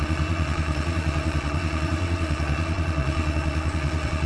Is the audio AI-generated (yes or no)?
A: yes